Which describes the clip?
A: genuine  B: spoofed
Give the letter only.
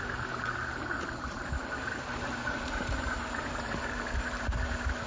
B